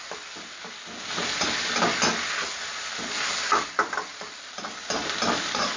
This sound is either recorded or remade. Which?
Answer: recorded